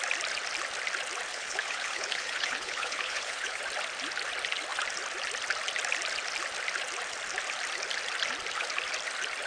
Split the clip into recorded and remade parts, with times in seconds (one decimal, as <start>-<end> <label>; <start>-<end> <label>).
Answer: 0.0-1.3 recorded; 1.3-3.6 remade; 3.6-9.5 recorded